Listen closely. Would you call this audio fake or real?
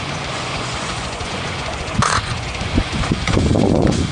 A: fake